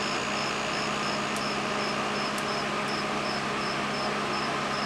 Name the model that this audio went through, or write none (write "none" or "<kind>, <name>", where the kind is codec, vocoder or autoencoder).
none